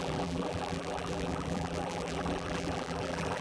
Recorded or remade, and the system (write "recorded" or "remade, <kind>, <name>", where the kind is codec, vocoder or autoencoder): remade, vocoder, BigVGAN v2